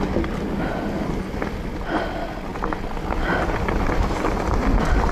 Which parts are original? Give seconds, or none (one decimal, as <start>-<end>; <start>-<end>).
0.0-5.1